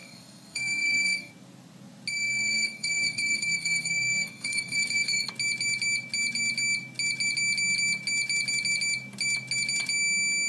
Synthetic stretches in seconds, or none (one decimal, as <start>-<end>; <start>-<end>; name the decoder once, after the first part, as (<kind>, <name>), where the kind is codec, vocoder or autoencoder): 0.0-1.3 (codec, SNAC); 2.1-5.3